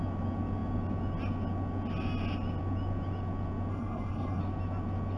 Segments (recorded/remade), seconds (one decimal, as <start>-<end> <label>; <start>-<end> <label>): 0.0-3.7 recorded; 3.7-4.4 remade; 4.4-5.2 recorded